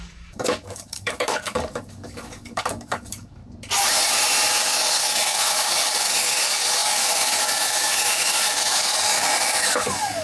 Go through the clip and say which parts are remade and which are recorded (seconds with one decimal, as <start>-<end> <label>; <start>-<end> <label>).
0.0-3.4 remade; 3.4-4.6 recorded; 4.6-10.2 remade